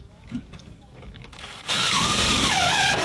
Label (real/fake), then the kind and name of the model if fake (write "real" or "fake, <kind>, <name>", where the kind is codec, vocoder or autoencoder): fake, codec, DAC